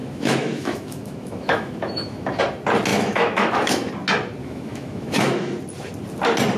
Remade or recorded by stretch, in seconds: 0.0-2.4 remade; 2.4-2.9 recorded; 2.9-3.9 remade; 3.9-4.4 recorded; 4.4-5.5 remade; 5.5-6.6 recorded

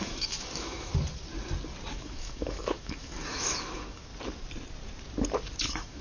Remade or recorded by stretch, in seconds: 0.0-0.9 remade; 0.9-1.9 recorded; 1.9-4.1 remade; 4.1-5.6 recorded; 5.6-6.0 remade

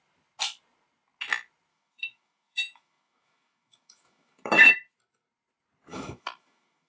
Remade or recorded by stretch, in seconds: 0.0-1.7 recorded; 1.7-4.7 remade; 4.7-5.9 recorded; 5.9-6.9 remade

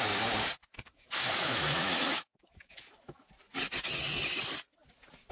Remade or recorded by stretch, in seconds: 0.0-0.7 recorded; 0.7-3.3 remade; 3.3-5.3 recorded

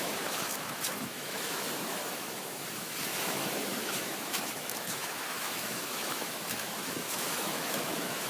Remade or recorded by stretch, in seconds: 0.0-8.3 remade

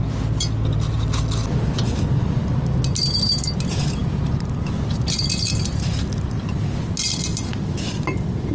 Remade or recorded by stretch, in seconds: 0.0-8.5 recorded

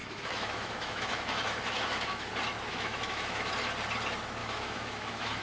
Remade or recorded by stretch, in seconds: 0.0-2.3 remade; 2.3-2.7 recorded; 2.7-3.5 remade; 3.5-4.4 recorded; 4.4-5.4 remade